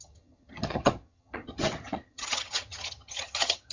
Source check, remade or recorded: remade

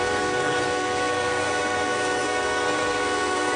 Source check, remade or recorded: remade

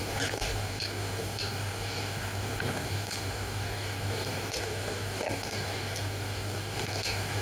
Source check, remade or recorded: remade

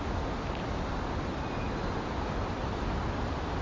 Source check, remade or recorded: recorded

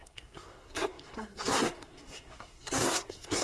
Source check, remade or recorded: remade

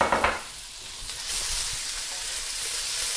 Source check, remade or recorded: recorded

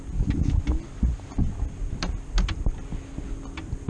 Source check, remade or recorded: recorded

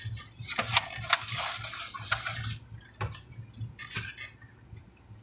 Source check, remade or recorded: recorded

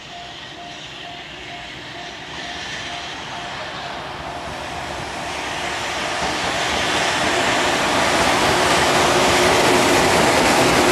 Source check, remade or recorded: recorded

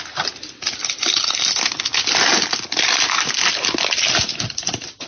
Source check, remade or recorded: recorded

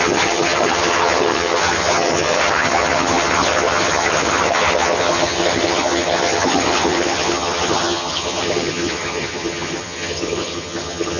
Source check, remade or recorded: remade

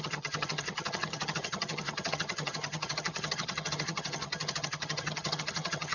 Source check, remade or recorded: remade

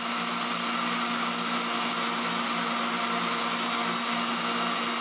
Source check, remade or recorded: recorded